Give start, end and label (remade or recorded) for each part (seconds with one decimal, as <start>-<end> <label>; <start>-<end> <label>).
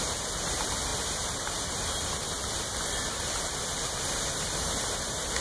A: 0.0-0.9 recorded; 0.9-3.7 remade; 3.7-5.4 recorded